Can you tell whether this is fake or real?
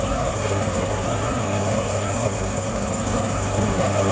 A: fake